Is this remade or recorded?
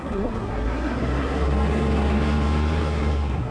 remade